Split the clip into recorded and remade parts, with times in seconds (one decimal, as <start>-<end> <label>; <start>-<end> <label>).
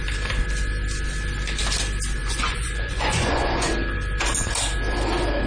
0.0-2.2 recorded; 2.2-3.7 remade; 3.7-5.5 recorded